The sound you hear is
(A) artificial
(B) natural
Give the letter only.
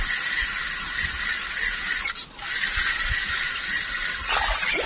B